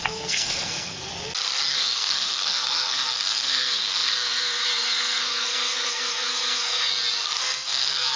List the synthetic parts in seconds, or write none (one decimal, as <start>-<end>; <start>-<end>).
0.0-1.1; 1.7-6.9; 7.4-8.2